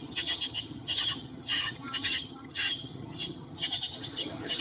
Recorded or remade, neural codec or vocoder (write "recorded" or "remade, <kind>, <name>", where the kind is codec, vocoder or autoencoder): remade, vocoder, HiFi-GAN